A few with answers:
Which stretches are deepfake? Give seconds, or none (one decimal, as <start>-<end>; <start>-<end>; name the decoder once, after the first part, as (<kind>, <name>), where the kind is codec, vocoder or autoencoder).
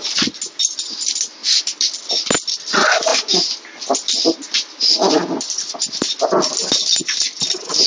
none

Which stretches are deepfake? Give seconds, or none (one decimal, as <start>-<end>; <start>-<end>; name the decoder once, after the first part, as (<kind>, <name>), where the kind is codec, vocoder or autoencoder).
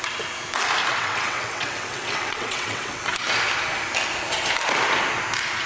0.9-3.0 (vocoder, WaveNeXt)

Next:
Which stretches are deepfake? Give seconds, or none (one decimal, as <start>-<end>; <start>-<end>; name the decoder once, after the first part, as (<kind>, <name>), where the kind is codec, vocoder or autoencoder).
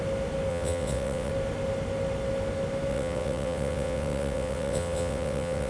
0.5-1.3 (vocoder, WaveNeXt); 2.9-5.7